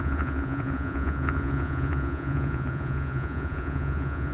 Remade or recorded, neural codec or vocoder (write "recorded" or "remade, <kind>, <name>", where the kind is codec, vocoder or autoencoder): remade, vocoder, Vocos